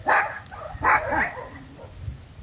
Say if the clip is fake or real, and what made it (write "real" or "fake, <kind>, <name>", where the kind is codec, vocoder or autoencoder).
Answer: real